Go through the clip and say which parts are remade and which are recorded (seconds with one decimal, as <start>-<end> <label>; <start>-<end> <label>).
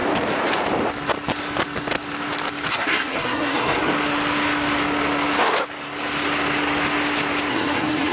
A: 0.0-2.7 recorded; 2.7-3.9 remade; 3.9-7.5 recorded; 7.5-8.1 remade